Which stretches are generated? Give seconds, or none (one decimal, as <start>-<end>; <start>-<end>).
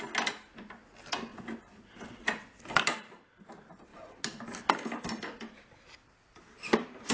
none